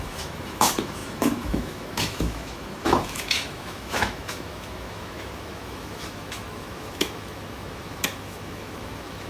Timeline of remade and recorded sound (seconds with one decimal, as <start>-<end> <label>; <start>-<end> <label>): 0.0-9.3 remade